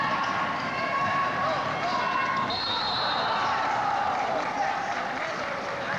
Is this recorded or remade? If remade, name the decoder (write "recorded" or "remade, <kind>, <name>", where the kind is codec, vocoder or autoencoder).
recorded